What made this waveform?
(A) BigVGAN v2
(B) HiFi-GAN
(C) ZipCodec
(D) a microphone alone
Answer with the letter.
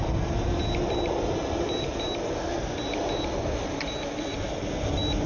D